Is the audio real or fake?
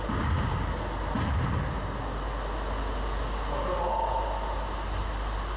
real